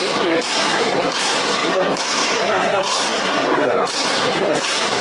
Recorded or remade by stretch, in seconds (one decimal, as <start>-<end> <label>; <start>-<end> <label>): 0.0-5.0 remade

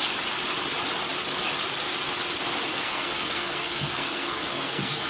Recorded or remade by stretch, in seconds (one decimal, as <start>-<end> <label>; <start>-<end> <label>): 0.0-2.7 recorded; 2.7-5.1 remade

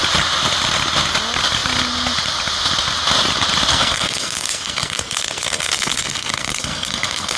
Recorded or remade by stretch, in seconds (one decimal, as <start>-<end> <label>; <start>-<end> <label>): 0.0-3.7 recorded; 3.7-7.4 remade

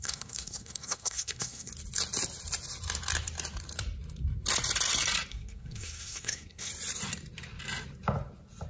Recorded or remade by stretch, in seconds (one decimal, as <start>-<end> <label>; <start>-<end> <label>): 0.0-1.7 remade; 1.7-5.3 recorded; 5.3-6.7 remade; 6.7-8.7 recorded

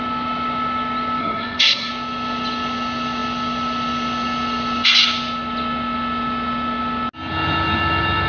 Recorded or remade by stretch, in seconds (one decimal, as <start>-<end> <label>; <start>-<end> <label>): 0.0-1.2 recorded; 1.2-1.9 remade; 1.9-8.3 recorded